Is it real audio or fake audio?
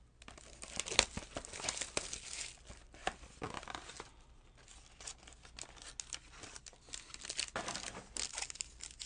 real